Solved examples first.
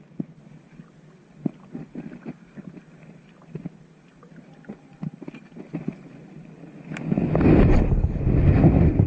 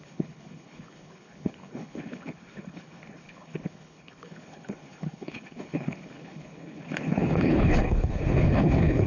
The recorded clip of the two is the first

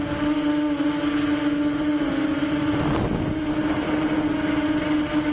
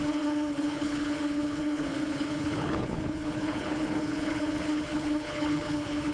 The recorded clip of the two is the first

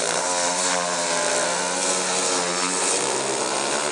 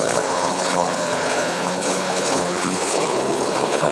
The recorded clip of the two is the first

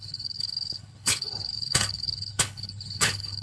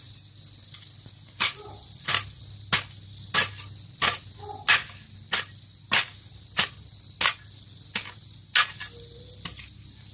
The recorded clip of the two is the second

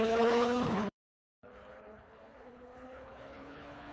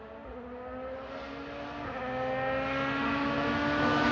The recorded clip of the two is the second